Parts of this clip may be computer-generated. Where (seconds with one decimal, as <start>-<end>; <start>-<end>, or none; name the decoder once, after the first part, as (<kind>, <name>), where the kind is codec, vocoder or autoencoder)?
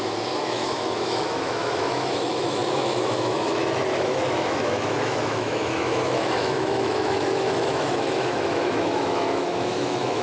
0.0-10.2 (autoencoder, DAC-VAE)